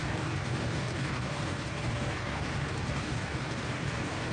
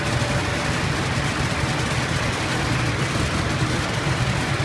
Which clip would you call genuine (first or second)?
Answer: second